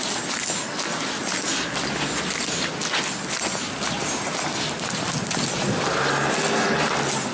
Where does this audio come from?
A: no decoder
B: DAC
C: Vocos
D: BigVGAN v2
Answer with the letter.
A